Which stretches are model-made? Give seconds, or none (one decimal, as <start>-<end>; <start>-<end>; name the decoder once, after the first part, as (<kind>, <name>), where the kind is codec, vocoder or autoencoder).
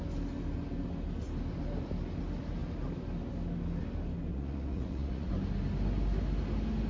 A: 4.3-5.3 (vocoder, Vocos)